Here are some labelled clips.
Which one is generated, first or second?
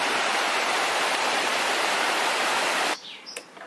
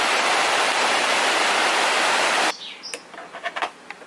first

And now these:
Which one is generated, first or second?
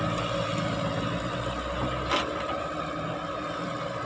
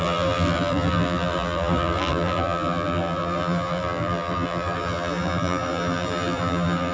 second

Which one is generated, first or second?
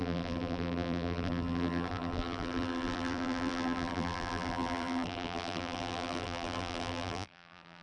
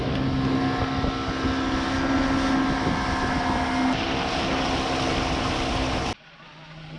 first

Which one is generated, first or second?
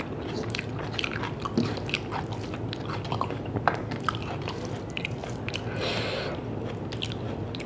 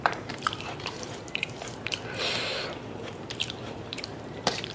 second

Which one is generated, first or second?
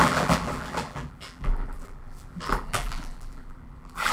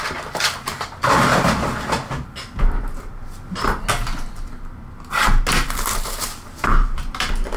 first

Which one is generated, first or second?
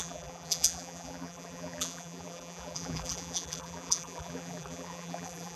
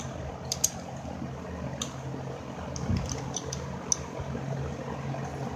first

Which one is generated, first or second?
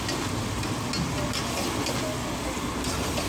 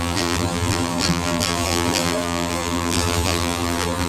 second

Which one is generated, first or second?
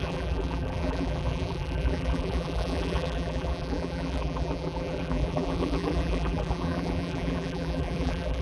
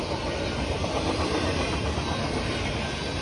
first